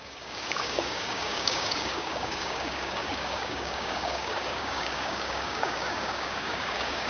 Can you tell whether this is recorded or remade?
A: remade